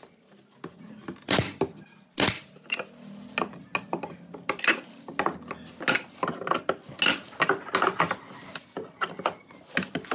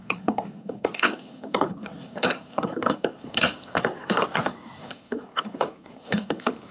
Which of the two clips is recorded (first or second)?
first